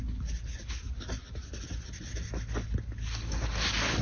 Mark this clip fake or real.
real